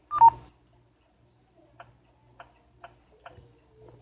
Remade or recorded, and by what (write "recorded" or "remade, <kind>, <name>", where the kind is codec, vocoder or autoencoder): recorded